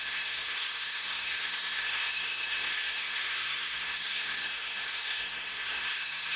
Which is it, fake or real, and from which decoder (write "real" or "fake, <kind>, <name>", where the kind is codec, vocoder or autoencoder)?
fake, codec, SNAC